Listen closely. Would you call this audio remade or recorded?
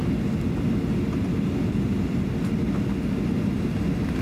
recorded